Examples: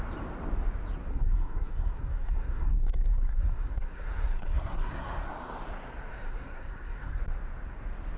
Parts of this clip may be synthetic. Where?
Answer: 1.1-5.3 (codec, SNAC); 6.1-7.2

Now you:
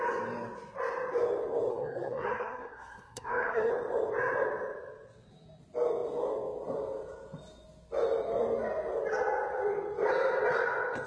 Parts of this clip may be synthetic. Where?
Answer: 1.7-3.7 (codec, SNAC)

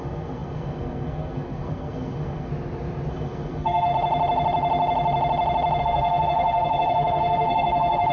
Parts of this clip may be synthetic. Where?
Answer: 0.0-2.5 (codec, SNAC); 3.1-3.9; 5.8-8.1

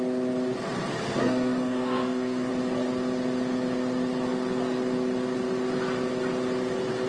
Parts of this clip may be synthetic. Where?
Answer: 1.2-2.5 (codec, SNAC)

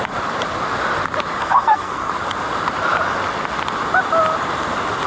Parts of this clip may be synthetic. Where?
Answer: 1.4-2.1 (codec, SNAC)

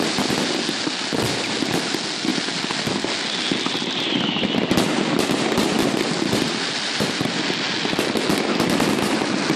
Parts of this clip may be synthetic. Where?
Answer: none

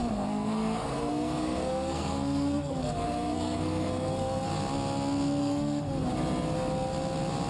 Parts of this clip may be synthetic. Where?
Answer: 0.0-4.5 (codec, SNAC); 5.4-6.0

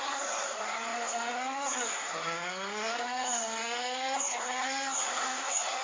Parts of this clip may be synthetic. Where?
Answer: 0.0-5.8 (codec, SNAC)